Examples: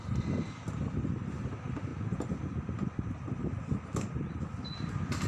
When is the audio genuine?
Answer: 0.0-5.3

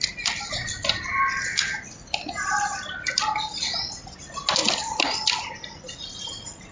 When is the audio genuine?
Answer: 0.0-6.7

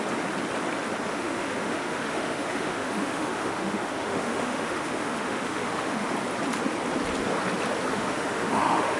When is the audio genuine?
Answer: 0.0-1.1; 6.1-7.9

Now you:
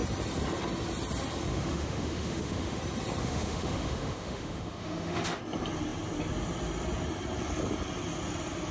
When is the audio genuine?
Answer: 0.0-1.5; 2.8-3.2; 5.4-8.7